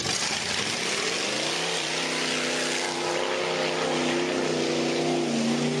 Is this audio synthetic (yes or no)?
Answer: no